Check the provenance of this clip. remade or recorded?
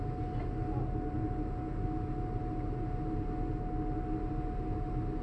recorded